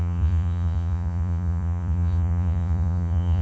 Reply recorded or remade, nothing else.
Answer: remade